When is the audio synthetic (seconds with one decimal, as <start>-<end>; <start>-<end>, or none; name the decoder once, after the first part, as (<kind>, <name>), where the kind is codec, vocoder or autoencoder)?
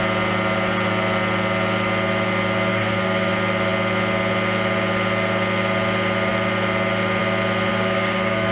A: 2.7-3.3 (codec, DAC); 7.7-8.5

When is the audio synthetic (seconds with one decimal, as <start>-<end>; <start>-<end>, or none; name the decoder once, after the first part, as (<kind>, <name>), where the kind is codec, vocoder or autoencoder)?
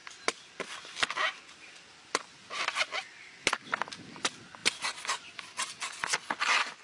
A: none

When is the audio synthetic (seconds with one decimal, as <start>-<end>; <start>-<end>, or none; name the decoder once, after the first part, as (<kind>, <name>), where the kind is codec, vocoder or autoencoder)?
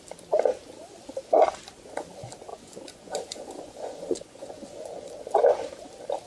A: 2.5-5.1 (vocoder, Vocos)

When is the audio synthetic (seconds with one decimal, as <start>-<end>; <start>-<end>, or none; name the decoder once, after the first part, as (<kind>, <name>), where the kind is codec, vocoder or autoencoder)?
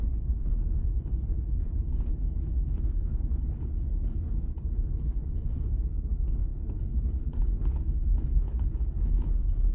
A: 0.0-3.9 (codec, HILCodec); 4.7-9.7